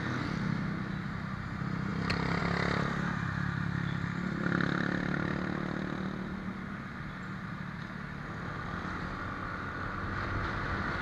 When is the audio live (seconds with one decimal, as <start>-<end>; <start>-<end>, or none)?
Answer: 0.0-11.0